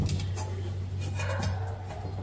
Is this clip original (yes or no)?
yes